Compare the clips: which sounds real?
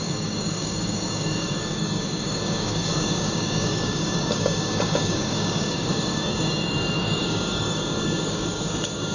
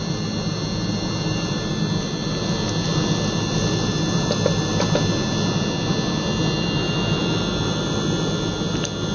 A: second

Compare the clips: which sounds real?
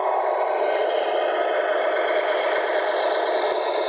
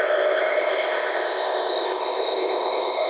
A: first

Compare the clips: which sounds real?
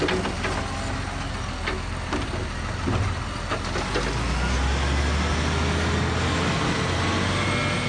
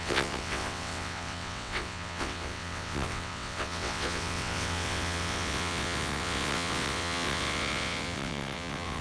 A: first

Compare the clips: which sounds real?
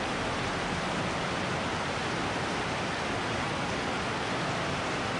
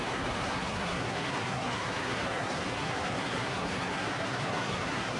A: first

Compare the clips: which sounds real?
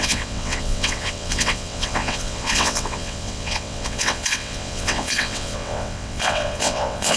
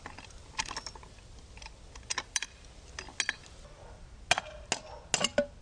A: second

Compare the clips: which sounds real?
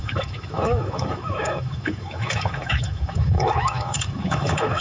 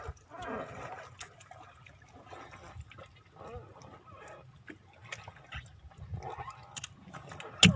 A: second